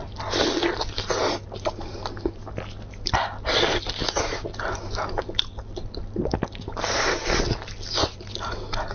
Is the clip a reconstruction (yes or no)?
no